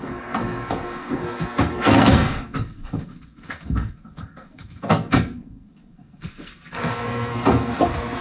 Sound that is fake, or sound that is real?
fake